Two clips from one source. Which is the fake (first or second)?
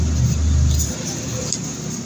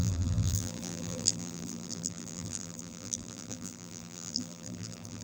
second